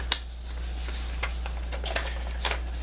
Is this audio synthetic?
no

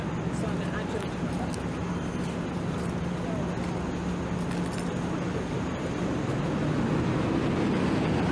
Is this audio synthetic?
no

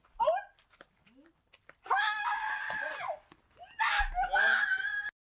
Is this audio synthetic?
no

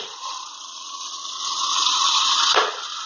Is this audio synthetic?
yes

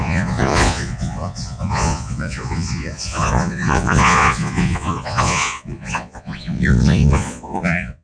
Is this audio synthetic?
yes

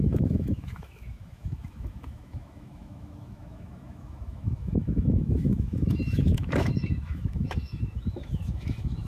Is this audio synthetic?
yes